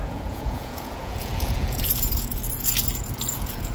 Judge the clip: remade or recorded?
remade